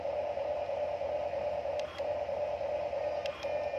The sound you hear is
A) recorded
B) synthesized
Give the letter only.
A